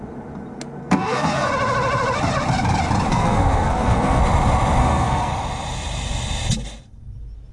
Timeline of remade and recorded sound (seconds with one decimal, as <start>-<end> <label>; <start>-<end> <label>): 0.0-0.8 recorded; 0.8-1.5 remade; 1.5-3.1 recorded; 3.1-4.2 remade; 4.2-4.8 recorded; 4.8-5.3 remade; 5.3-7.5 recorded